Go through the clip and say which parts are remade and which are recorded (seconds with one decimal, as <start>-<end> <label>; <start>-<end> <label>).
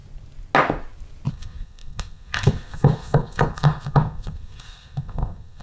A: 0.0-1.3 recorded; 1.3-5.6 remade